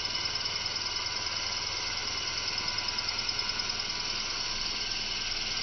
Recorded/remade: recorded